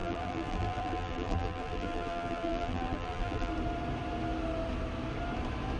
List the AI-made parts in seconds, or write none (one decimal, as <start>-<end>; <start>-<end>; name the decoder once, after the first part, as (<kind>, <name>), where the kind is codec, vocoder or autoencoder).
0.0-3.5 (vocoder, BigVGAN v2)